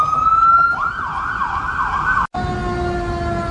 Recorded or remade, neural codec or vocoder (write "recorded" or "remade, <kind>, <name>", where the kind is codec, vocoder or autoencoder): recorded